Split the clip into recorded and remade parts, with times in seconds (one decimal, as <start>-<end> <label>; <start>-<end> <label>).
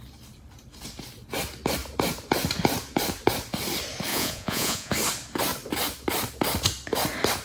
0.0-4.1 recorded; 4.1-4.9 remade; 4.9-7.4 recorded